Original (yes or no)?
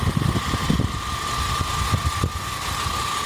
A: yes